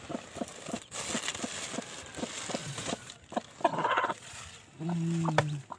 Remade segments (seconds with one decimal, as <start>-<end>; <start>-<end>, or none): 2.6-3.1; 3.7-4.4